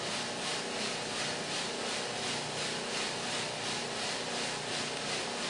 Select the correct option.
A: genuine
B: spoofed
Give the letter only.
A